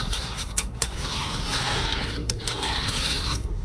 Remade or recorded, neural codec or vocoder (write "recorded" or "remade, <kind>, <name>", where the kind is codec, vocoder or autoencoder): remade, codec, SNAC